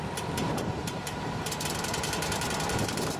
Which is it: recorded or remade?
remade